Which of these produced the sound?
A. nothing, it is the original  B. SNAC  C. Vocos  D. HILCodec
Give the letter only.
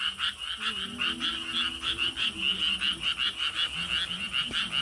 A